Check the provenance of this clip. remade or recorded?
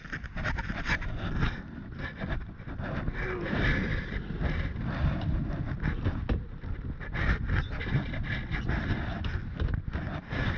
recorded